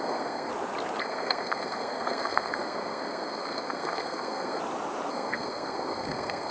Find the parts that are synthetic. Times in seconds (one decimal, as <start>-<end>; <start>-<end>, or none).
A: 0.0-0.5; 1.0-4.6; 5.1-6.5